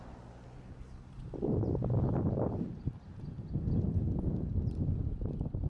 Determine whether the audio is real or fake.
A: real